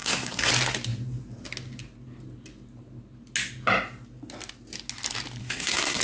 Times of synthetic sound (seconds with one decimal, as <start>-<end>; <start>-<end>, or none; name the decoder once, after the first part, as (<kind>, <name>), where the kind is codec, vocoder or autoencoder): 0.0-0.5 (codec, SNAC); 5.4-6.0